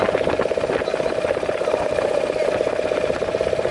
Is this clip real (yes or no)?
yes